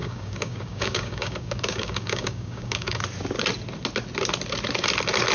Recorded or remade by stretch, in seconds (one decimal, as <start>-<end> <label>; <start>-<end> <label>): 0.0-3.0 remade; 3.0-5.3 recorded